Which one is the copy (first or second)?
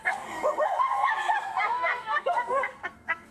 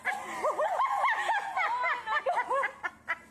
first